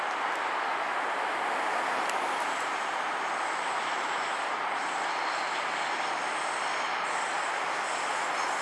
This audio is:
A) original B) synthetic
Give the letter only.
A